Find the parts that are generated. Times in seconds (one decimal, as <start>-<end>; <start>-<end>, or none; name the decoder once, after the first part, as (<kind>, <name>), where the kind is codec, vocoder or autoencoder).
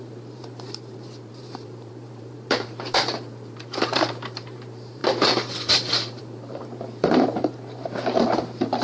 0.0-8.8 (vocoder, BigVGAN v2)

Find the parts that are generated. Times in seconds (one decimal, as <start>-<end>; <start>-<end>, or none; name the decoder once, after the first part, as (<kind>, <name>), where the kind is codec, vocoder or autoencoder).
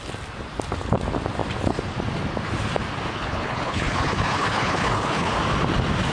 3.1-5.3 (codec, HILCodec)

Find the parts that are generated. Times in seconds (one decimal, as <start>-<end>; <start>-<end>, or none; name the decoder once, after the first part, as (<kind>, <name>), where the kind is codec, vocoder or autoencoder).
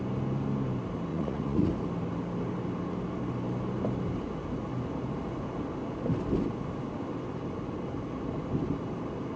1.1-1.7 (vocoder, Vocos)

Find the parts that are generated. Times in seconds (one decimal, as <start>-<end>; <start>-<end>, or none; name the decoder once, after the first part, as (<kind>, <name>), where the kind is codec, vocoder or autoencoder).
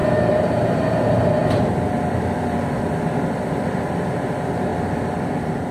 0.0-0.9 (vocoder, BigVGAN v2); 1.4-3.5; 4.7-5.7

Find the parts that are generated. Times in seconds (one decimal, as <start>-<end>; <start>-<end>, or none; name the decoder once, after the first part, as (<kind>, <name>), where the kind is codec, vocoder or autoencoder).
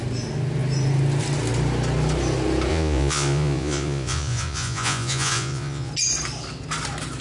2.7-5.9 (vocoder, Vocos)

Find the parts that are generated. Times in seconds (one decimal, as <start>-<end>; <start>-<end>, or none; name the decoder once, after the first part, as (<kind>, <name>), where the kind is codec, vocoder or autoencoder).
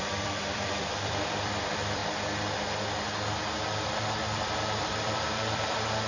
0.0-2.0 (vocoder, BigVGAN v2); 4.4-6.1